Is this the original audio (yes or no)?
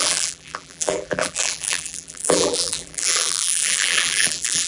no